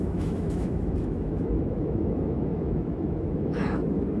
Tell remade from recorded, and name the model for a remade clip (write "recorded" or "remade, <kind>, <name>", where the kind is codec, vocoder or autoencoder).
remade, autoencoder, DAC-VAE